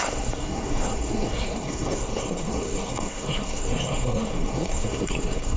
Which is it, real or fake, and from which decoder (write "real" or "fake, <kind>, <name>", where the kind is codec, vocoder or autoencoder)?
fake, codec, SNAC